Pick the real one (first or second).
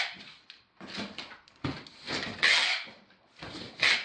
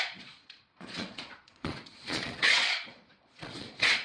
first